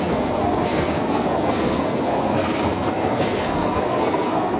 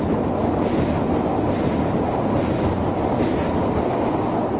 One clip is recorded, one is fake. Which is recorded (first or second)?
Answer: second